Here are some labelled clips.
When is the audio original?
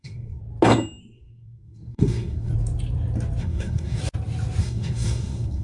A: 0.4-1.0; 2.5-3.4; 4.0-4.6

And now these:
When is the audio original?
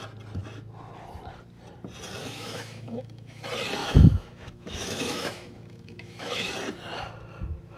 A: 0.0-2.2; 3.4-3.8; 6.5-7.8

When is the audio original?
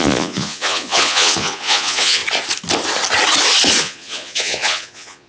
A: 2.2-3.8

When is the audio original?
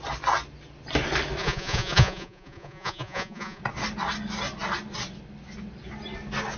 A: 0.0-1.4; 3.6-6.6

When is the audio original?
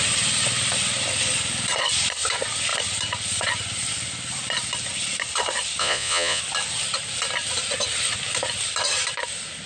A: 0.0-5.8; 6.4-9.7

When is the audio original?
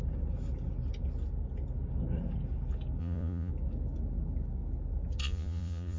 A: 0.0-3.0; 3.5-5.2